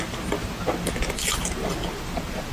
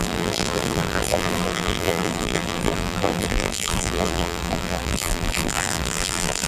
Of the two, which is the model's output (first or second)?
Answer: second